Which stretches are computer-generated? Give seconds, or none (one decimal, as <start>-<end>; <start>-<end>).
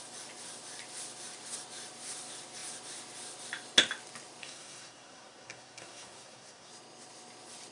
4.4-6.7